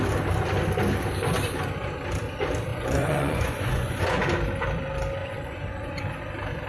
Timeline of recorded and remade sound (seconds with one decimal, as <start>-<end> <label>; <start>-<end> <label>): 0.0-2.7 recorded; 2.7-4.2 remade; 4.2-5.2 recorded; 5.2-6.0 remade; 6.0-6.7 recorded